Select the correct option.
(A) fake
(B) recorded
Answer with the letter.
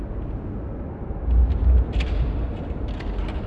B